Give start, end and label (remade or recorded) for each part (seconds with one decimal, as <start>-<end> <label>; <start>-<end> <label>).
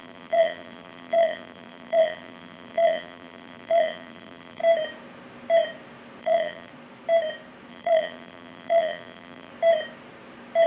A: 0.0-4.6 remade; 4.6-6.2 recorded; 6.2-6.7 remade; 6.7-7.7 recorded; 7.7-9.5 remade; 9.5-10.7 recorded